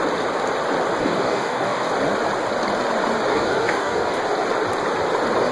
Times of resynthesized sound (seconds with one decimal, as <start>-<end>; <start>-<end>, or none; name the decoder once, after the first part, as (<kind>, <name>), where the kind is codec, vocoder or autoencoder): 1.0-1.9 (codec, DAC); 3.3-4.2